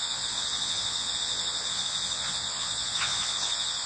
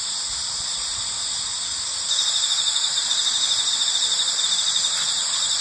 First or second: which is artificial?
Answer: first